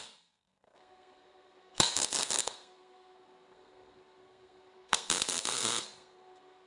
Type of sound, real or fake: fake